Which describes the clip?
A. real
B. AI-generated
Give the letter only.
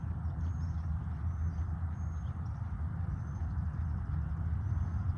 A